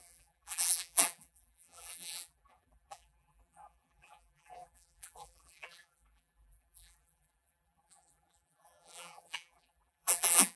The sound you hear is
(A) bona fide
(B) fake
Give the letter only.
B